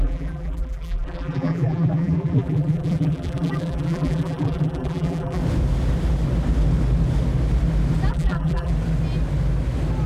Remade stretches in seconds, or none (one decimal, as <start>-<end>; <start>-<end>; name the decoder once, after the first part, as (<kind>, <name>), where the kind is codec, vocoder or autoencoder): 0.0-5.4 (vocoder, BigVGAN v2); 8.1-8.7

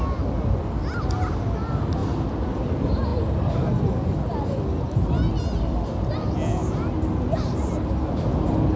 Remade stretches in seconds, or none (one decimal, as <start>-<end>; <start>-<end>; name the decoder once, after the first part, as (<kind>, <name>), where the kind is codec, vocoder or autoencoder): none

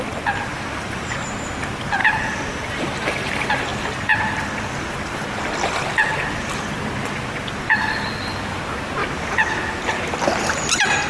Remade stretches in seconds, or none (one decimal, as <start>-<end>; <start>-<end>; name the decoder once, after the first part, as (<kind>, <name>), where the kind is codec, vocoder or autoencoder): 0.5-1.1 (vocoder, BigVGAN v2); 2.0-3.3